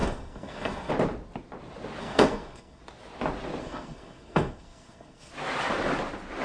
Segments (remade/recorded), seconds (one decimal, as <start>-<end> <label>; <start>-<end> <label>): 0.0-0.9 remade; 0.9-2.0 recorded; 2.0-2.8 remade; 2.8-3.6 recorded; 3.6-5.3 remade; 5.3-6.4 recorded